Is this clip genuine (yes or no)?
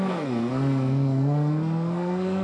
no